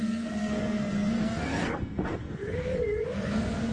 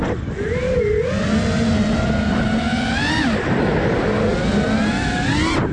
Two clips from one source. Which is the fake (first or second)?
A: first